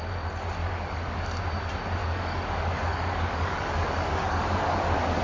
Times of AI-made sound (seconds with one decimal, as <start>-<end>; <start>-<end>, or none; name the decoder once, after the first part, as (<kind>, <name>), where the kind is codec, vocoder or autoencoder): 0.6-1.4 (codec, DAC); 2.0-5.2

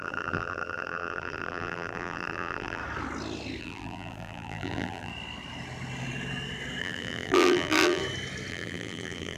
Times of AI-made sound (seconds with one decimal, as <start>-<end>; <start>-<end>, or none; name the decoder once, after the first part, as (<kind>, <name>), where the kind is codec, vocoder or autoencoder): 0.0-2.8 (vocoder, BigVGAN v2); 3.6-5.1; 6.8-8.0; 8.5-9.4

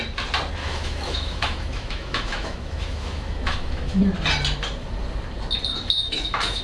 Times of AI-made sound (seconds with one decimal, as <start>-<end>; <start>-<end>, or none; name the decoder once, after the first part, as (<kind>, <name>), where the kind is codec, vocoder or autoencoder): 0.6-4.0 (autoencoder, DAC-VAE); 5.7-6.6